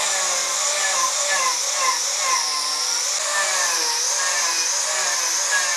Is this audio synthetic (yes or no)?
no